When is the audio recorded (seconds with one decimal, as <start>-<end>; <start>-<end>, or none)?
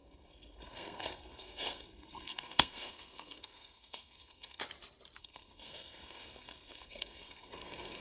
4.6-5.2